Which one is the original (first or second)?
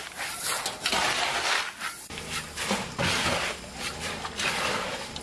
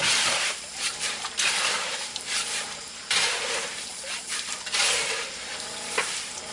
first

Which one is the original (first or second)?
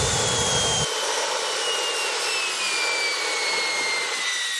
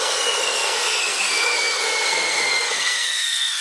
first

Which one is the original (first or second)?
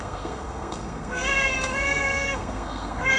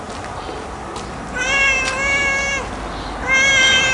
second